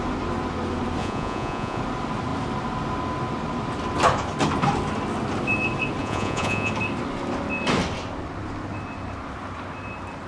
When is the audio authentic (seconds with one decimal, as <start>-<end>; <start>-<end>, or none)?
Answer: 0.0-1.0; 1.8-6.0; 6.7-10.3